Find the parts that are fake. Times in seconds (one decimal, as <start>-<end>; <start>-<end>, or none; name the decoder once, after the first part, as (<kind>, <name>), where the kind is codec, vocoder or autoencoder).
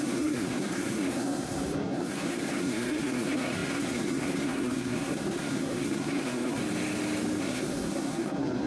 0.0-6.6 (codec, SNAC); 7.4-8.7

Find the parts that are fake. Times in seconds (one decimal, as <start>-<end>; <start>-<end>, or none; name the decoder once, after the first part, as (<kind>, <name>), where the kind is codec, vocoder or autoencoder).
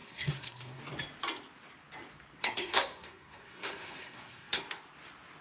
0.0-0.8 (codec, SNAC); 2.4-4.6